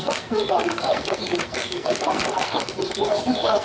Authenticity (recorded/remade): remade